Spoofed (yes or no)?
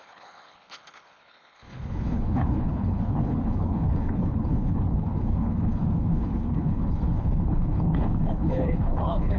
yes